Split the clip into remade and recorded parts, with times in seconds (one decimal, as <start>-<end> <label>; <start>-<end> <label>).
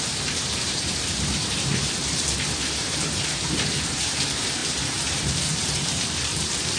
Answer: 0.0-6.8 remade